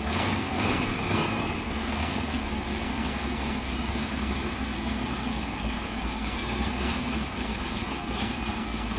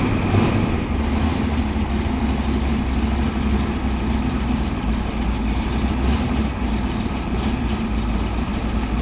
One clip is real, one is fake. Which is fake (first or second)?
first